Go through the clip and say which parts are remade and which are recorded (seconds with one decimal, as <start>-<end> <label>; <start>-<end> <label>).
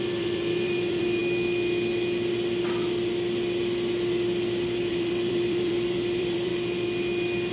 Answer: 0.0-1.2 remade; 1.2-4.9 recorded; 4.9-6.5 remade; 6.5-7.5 recorded